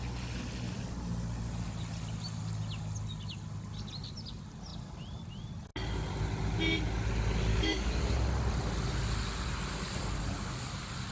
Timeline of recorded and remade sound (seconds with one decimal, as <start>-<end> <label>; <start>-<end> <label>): 0.0-7.5 recorded; 7.5-8.0 remade; 8.0-11.1 recorded